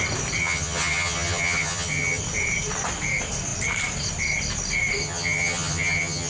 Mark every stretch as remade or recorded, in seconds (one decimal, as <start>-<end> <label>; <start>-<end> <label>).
0.0-0.4 recorded; 0.4-2.2 remade; 2.2-5.0 recorded; 5.0-6.3 remade